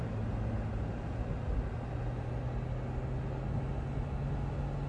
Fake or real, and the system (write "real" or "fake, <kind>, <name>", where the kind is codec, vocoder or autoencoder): real